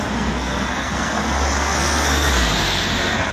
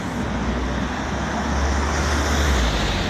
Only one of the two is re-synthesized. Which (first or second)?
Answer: first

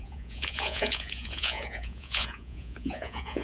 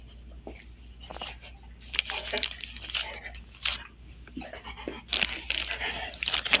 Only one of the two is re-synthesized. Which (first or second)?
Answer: first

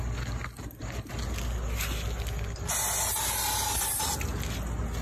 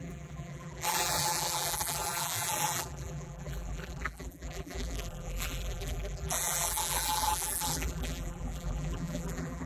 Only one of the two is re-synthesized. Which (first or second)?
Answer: second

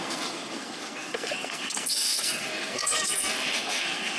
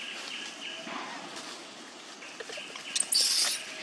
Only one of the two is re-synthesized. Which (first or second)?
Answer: first